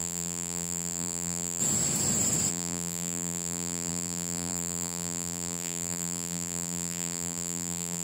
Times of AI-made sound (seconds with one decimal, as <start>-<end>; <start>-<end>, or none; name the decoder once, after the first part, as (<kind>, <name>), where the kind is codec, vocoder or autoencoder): 0.0-1.6 (vocoder, BigVGAN v2); 2.5-8.0